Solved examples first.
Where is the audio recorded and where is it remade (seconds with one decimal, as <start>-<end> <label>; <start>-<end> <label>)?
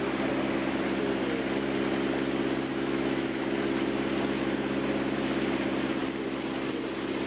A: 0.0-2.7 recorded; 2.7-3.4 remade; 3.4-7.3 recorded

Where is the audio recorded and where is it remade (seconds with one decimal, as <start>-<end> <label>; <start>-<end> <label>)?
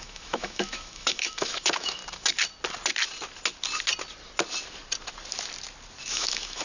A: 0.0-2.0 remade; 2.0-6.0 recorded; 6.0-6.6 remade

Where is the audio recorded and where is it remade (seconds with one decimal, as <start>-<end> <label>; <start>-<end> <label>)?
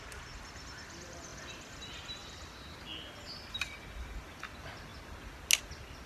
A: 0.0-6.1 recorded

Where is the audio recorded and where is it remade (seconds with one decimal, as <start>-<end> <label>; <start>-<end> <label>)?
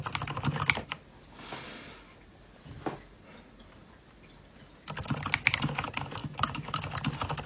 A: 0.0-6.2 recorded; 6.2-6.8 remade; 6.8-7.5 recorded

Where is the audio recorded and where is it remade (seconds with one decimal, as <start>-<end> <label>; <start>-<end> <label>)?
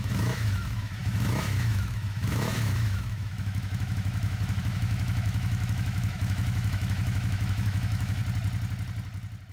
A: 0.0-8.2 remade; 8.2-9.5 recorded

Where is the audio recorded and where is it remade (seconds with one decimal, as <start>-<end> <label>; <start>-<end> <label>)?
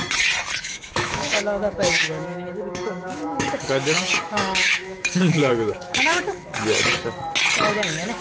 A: 0.0-0.6 recorded; 0.6-6.5 remade; 6.5-7.7 recorded; 7.7-8.2 remade